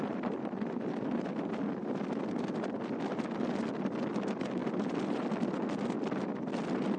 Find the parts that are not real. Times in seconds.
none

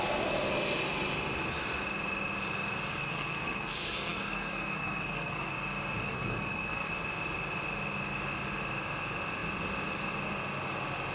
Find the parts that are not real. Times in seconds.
2.9-5.5 (codec, SNAC); 6.0-6.9

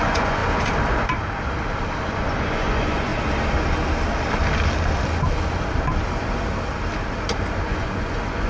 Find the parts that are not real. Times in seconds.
0.0-0.4 (vocoder, Vocos); 2.0-3.1; 7.7-8.5